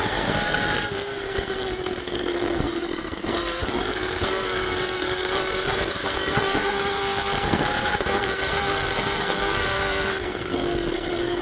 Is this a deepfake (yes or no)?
yes